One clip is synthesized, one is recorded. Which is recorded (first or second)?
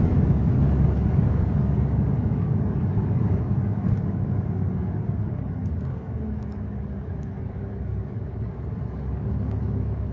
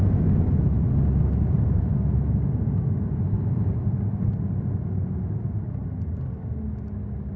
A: second